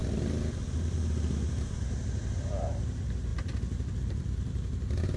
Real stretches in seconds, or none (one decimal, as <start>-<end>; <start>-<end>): 0.0-5.2